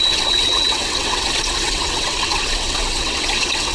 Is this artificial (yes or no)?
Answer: yes